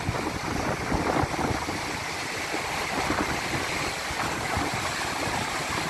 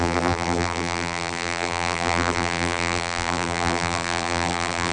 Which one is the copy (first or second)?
second